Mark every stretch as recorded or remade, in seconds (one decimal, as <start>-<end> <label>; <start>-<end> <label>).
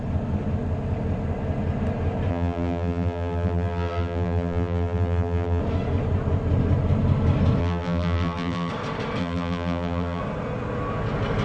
0.0-2.3 recorded; 2.3-5.6 remade; 5.6-7.6 recorded; 7.6-8.7 remade; 8.7-9.2 recorded; 9.2-10.2 remade; 10.2-11.4 recorded